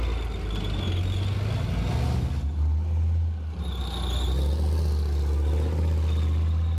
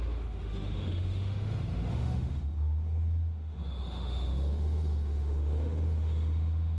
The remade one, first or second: second